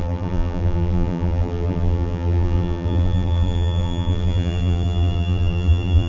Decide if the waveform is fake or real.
fake